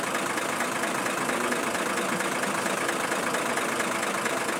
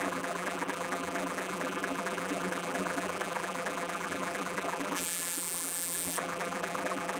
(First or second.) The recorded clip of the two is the first